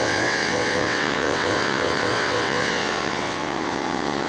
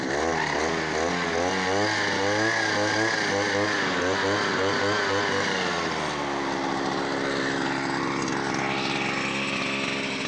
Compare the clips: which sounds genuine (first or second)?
second